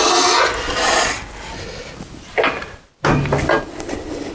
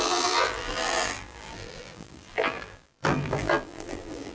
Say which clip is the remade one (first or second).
second